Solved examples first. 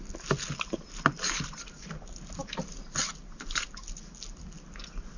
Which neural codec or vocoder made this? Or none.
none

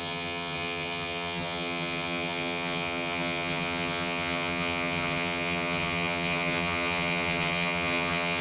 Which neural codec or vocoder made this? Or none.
vocoder, HiFi-GAN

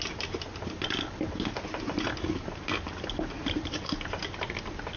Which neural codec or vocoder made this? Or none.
none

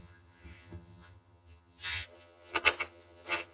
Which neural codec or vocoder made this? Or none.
vocoder, HiFi-GAN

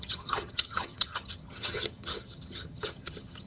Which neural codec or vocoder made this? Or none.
vocoder, HiFi-GAN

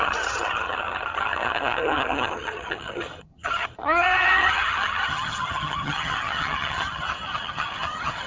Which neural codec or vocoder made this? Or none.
vocoder, HiFi-GAN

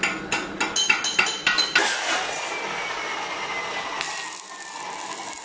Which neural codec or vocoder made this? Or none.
none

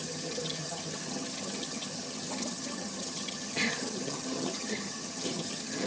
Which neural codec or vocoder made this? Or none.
vocoder, HiFi-GAN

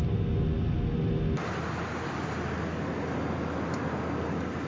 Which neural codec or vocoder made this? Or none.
none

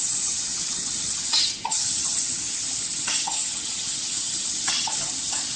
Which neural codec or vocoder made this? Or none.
vocoder, HiFi-GAN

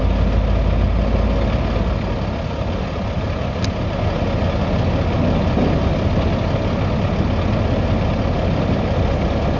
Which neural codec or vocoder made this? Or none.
none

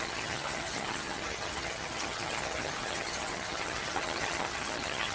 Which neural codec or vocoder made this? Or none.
vocoder, HiFi-GAN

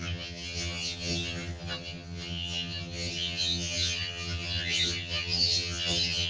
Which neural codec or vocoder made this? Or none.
vocoder, HiFi-GAN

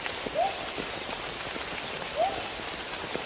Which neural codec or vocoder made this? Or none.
none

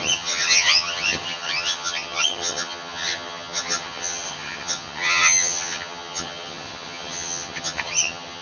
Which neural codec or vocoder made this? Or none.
vocoder, HiFi-GAN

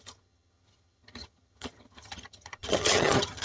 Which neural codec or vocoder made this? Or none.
vocoder, HiFi-GAN